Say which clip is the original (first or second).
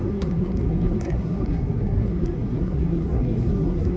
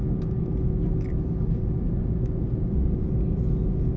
second